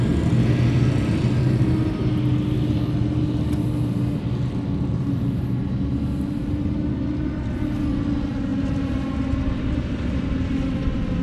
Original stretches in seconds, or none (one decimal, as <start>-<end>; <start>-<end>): 0.0-11.2